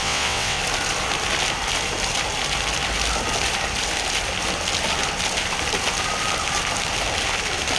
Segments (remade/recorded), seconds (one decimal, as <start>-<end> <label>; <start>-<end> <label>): 0.0-0.6 remade; 0.6-7.8 recorded